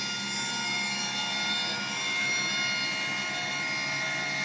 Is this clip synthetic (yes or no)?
no